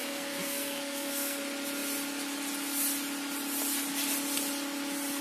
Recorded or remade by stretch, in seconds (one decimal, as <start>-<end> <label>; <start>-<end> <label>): 0.0-1.4 remade; 1.4-5.2 recorded